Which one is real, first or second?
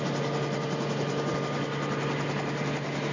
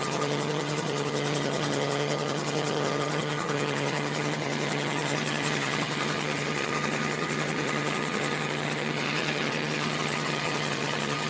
first